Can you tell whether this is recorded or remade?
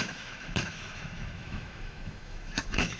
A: remade